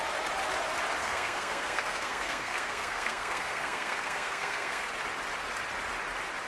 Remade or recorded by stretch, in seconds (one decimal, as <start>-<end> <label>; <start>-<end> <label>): 0.0-1.0 recorded; 1.0-4.9 remade; 4.9-6.5 recorded

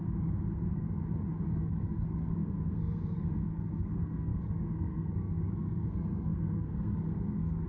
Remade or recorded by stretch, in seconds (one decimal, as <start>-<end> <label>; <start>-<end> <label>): 0.0-1.0 remade; 1.0-1.6 recorded; 1.6-7.7 remade

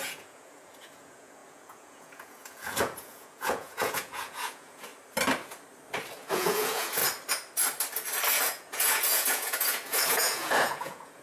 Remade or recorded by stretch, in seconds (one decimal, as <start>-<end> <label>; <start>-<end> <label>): 0.0-4.9 remade; 4.9-6.3 recorded; 6.3-7.0 remade; 7.0-8.3 recorded; 8.3-11.2 remade

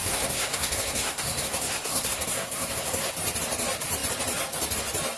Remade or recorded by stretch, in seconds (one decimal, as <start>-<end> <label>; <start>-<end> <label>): 0.0-3.1 remade; 3.1-5.2 recorded